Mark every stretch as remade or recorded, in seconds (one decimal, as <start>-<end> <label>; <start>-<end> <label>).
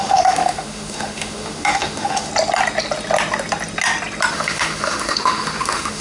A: 0.0-2.3 remade; 2.3-4.3 recorded; 4.3-6.0 remade